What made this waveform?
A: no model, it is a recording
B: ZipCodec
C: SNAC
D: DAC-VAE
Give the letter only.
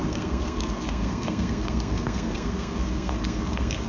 C